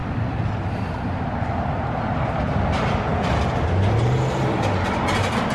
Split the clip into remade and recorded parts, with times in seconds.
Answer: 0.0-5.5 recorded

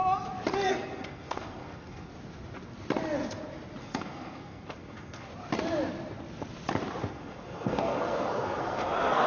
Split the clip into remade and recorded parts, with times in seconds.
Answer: 0.0-0.7 recorded; 0.7-2.1 remade; 2.1-3.8 recorded; 3.8-5.3 remade; 5.3-7.1 recorded; 7.1-9.3 remade

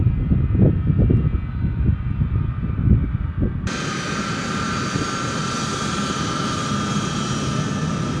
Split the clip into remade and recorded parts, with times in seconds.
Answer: 0.0-8.2 recorded

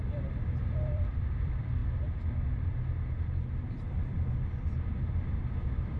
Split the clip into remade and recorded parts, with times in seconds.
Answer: 0.0-1.8 remade; 1.8-5.4 recorded; 5.4-6.0 remade

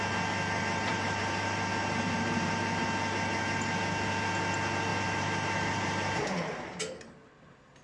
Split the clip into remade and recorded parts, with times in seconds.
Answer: 0.0-0.9 recorded; 0.9-2.8 remade; 2.8-4.9 recorded; 4.9-6.8 remade; 6.8-7.8 recorded

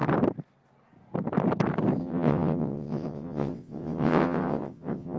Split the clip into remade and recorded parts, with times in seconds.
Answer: 0.0-2.0 recorded; 2.0-5.2 remade

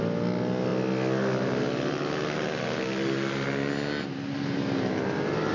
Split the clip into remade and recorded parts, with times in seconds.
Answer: 0.0-5.5 recorded